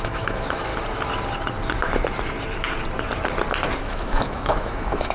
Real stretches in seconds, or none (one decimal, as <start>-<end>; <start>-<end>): 0.7-3.8